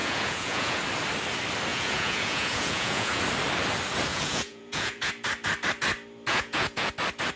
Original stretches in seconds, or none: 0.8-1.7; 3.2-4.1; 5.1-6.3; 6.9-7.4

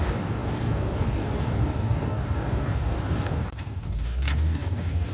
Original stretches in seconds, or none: none

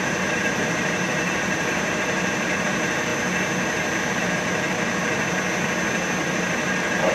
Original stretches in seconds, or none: 3.1-4.2; 5.2-6.2

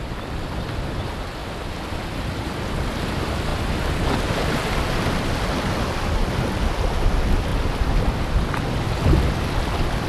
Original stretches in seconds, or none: 0.0-10.1

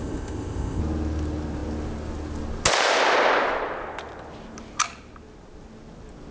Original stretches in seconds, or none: 0.8-6.3